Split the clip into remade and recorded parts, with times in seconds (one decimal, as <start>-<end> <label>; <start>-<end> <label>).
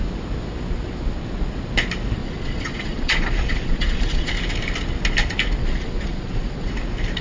0.0-2.2 recorded; 2.2-4.3 remade; 4.3-5.6 recorded; 5.6-6.7 remade; 6.7-7.2 recorded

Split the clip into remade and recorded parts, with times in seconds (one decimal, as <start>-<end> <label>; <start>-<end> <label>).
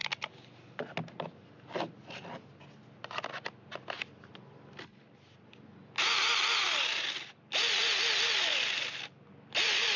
0.0-10.0 recorded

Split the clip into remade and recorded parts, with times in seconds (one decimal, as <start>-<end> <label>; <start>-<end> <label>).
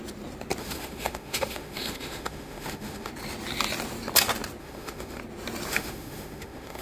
0.0-0.6 recorded; 0.6-3.1 remade; 3.1-4.6 recorded; 4.6-5.2 remade; 5.2-5.7 recorded; 5.7-6.8 remade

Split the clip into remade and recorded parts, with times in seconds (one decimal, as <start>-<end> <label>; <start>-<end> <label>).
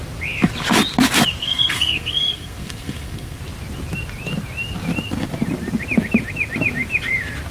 0.0-1.4 recorded; 1.4-3.4 remade; 3.4-7.5 recorded